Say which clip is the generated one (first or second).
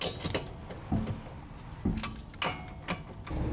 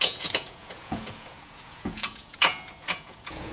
second